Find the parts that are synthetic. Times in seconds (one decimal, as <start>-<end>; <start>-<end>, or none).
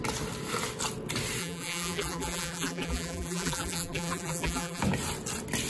1.4-4.8